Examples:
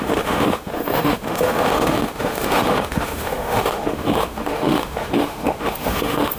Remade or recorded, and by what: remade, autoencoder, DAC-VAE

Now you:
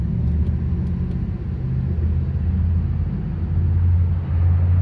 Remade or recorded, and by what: recorded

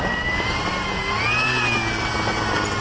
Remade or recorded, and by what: recorded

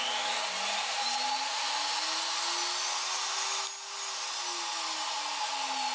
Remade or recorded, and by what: recorded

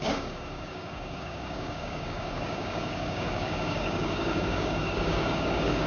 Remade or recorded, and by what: remade, codec, DAC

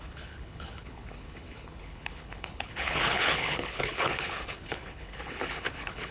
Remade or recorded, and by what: remade, codec, HILCodec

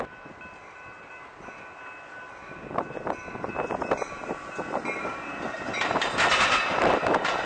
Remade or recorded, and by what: recorded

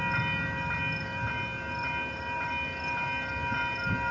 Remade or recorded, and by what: recorded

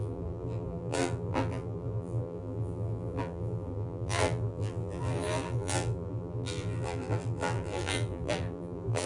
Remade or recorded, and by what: remade, vocoder, BigVGAN v2